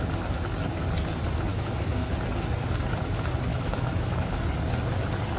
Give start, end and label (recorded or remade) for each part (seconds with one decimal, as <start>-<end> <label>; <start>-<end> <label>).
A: 0.0-1.5 recorded; 1.5-2.1 remade; 2.1-3.5 recorded; 3.5-4.3 remade; 4.3-5.4 recorded